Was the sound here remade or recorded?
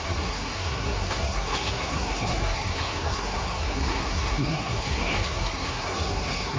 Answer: remade